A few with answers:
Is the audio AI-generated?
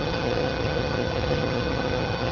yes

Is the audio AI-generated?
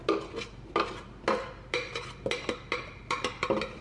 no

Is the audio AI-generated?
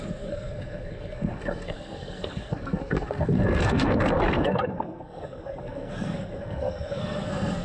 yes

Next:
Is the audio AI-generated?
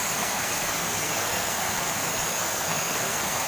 yes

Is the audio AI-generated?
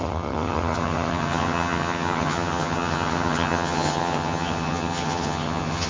yes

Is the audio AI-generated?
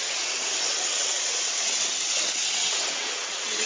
yes